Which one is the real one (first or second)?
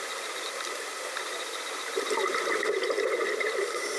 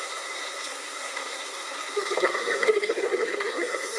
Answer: first